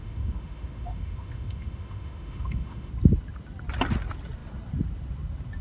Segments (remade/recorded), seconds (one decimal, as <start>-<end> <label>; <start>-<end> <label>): 0.0-2.9 remade; 2.9-5.6 recorded